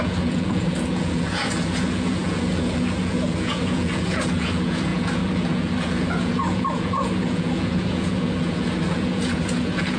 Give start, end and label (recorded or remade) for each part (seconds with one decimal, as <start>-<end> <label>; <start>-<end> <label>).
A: 0.0-10.0 remade